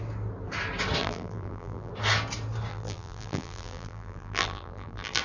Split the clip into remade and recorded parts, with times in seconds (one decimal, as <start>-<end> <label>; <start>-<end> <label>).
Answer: 0.0-1.0 recorded; 1.0-1.9 remade; 1.9-2.7 recorded; 2.7-5.2 remade